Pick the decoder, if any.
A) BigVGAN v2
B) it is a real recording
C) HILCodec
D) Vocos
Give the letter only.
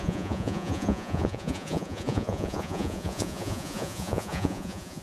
D